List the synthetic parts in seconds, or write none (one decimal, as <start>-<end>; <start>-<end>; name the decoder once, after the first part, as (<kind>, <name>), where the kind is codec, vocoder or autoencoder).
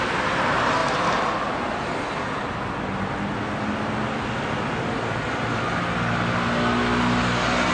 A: none